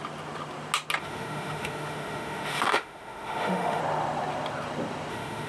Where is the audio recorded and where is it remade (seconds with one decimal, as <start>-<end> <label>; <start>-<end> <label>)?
0.0-1.0 recorded; 1.0-3.8 remade; 3.8-5.1 recorded; 5.1-5.5 remade